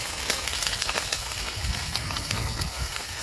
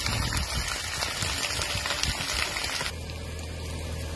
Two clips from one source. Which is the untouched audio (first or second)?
second